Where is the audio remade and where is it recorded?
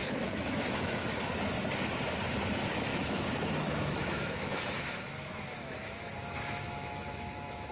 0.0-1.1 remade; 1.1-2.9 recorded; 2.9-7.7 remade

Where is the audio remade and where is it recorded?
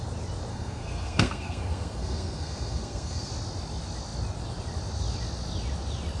0.0-0.5 recorded; 0.5-3.3 remade; 3.3-6.2 recorded